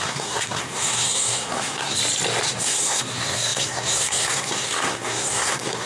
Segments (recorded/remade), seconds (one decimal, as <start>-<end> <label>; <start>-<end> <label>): 0.0-2.0 remade; 2.0-2.5 recorded; 2.5-5.9 remade